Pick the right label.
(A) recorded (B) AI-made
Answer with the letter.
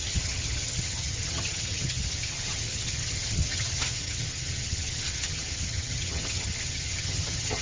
B